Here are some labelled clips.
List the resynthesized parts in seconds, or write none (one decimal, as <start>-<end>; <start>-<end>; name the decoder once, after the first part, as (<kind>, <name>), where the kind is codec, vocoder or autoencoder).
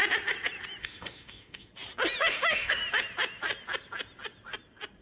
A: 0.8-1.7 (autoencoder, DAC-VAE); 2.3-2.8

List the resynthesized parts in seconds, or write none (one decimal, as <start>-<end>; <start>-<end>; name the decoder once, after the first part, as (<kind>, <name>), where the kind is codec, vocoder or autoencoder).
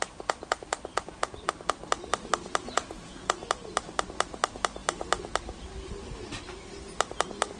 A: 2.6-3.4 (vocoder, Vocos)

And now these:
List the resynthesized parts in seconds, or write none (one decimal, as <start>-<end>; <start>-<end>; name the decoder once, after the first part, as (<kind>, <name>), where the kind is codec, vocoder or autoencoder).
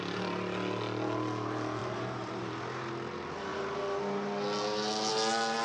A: 1.8-2.9 (vocoder, BigVGAN v2)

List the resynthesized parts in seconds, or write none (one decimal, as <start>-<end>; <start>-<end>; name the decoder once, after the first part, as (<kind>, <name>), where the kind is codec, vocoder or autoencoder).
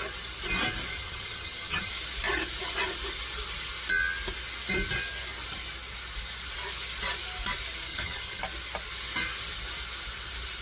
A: 0.9-1.9 (vocoder, HiFi-GAN); 7.9-8.4